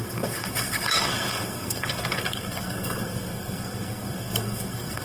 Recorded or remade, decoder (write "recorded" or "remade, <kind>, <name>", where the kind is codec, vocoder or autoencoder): remade, codec, SNAC